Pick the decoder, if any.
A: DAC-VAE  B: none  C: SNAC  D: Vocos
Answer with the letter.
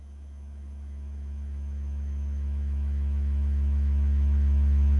A